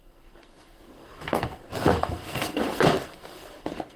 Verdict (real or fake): fake